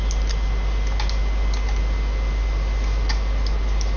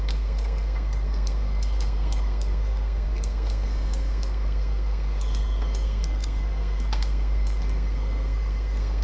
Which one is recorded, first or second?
first